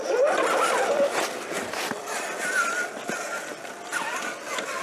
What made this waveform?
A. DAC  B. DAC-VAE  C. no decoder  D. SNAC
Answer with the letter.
C